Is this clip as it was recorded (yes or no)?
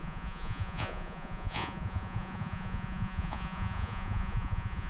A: no